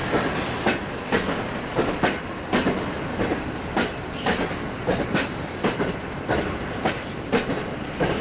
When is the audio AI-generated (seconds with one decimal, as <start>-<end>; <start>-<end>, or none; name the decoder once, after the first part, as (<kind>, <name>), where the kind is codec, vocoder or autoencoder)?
0.0-0.8 (vocoder, BigVGAN v2); 3.1-6.9